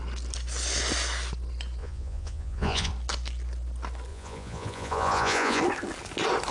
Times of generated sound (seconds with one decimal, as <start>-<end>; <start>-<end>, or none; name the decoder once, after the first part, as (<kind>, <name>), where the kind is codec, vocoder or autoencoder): 1.8-2.9 (vocoder, Vocos); 4.1-5.6